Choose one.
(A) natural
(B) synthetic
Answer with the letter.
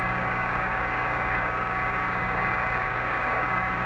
B